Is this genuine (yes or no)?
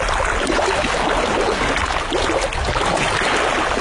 yes